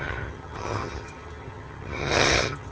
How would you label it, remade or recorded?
remade